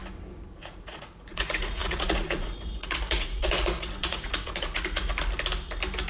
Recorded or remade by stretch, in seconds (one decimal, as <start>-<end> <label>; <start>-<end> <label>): 0.0-0.6 recorded; 0.6-5.1 remade; 5.1-6.1 recorded